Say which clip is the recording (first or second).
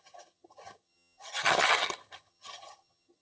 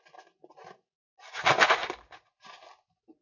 second